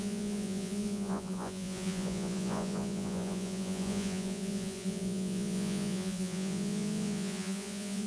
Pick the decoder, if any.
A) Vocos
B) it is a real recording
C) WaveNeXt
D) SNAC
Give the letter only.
A